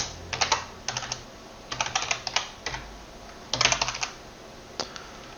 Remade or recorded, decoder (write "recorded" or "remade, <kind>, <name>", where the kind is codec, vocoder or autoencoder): recorded